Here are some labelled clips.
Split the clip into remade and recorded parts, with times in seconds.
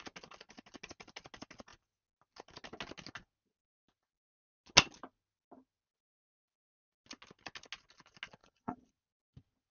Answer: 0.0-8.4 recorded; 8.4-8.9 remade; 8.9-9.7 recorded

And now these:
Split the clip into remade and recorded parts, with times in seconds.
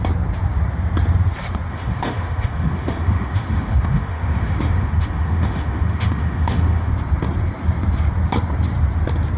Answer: 0.0-1.7 recorded; 1.7-6.9 remade; 6.9-9.4 recorded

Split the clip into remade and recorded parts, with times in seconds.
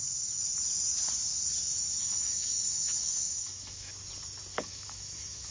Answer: 0.0-2.0 recorded; 2.0-3.9 remade; 3.9-4.5 recorded; 4.5-5.5 remade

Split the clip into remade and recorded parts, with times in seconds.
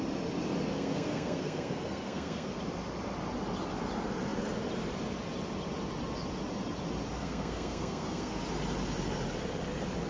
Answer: 0.0-0.7 recorded; 0.7-2.6 remade; 2.6-7.2 recorded; 7.2-8.4 remade; 8.4-10.1 recorded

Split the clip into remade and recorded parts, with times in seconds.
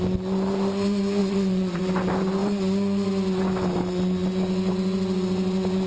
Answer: 0.0-1.2 recorded; 1.2-1.8 remade; 1.8-5.9 recorded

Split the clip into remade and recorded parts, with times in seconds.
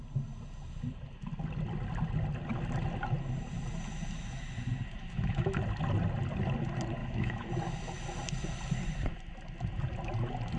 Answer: 0.0-5.0 recorded; 5.0-5.6 remade; 5.6-7.0 recorded; 7.0-7.5 remade; 7.5-10.6 recorded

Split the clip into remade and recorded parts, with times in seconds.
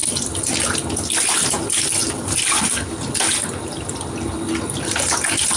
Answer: 0.0-5.6 recorded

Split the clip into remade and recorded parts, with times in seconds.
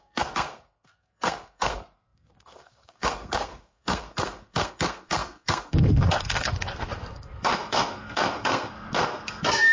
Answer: 0.0-9.7 remade